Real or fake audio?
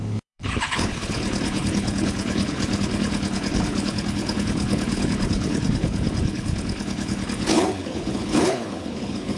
fake